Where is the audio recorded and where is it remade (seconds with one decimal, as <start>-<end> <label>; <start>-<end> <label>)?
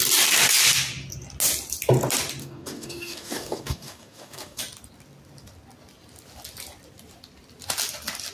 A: 0.0-2.4 recorded; 2.4-4.6 remade; 4.6-8.3 recorded